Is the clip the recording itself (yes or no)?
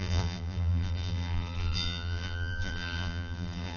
no